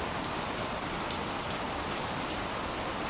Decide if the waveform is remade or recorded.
remade